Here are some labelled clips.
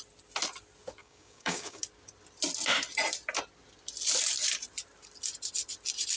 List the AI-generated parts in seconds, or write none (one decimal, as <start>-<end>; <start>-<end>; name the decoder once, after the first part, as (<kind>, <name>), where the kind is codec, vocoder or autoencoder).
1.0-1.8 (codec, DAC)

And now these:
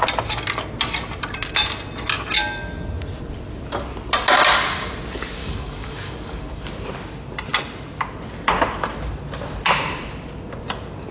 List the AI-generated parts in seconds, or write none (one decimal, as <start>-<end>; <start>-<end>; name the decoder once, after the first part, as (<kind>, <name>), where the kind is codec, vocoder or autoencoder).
5.4-6.6 (codec, DAC)

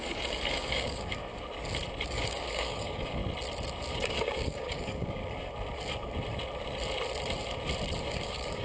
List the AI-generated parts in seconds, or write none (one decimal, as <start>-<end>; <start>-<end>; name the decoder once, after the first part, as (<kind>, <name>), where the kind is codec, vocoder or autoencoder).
0.0-1.3 (codec, DAC); 2.1-3.2; 3.9-5.2; 8.1-8.6